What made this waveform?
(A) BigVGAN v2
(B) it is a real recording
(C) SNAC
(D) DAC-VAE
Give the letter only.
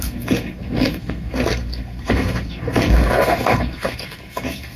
C